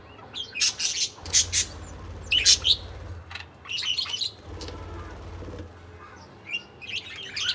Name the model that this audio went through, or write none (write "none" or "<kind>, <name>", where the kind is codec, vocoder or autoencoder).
none